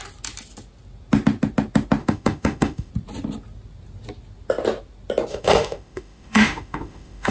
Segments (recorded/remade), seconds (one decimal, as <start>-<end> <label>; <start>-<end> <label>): 0.0-2.0 recorded; 2.0-2.9 remade; 2.9-5.3 recorded; 5.3-7.3 remade